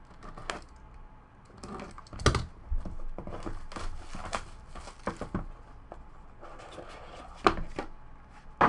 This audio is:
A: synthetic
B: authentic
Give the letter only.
B